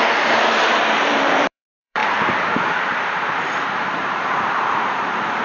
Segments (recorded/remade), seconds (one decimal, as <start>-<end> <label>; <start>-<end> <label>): 0.0-5.4 remade